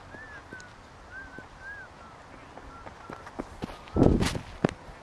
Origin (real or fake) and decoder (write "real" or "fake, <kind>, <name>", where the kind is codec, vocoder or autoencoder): real